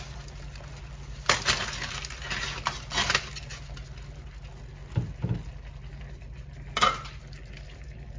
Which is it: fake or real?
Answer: real